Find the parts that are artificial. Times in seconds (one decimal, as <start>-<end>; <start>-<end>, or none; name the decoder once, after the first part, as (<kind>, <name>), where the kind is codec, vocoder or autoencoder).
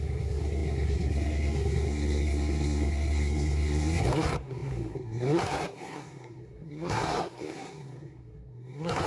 0.0-9.1 (codec, SNAC)